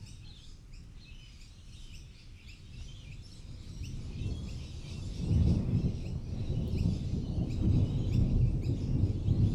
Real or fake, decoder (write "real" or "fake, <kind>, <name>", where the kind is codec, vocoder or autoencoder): real